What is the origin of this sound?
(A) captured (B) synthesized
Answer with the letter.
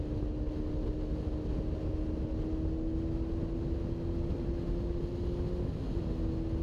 A